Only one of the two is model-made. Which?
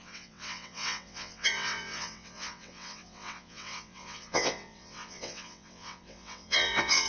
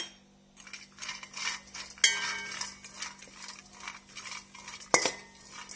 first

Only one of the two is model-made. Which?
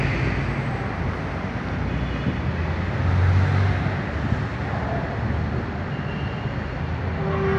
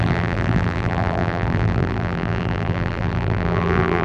second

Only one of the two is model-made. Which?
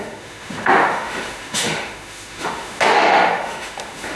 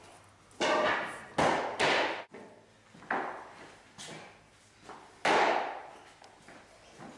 first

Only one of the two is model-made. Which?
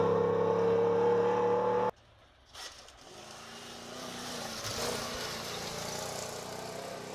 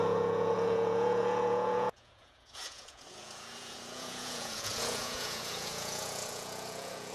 second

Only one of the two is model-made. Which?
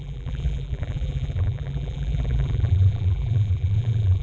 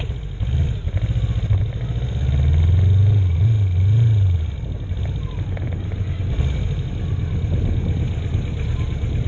first